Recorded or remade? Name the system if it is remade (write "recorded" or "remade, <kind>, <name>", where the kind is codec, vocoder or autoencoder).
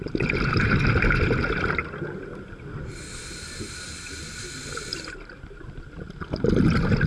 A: recorded